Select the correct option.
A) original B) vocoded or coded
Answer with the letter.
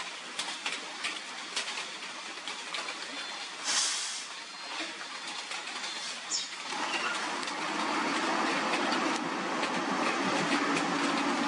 A